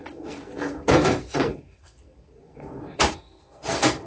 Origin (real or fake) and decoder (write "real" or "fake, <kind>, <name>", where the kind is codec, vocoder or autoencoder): fake, codec, SNAC